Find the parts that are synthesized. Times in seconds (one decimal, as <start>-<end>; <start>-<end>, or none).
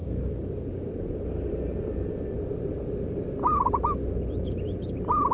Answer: 0.0-0.9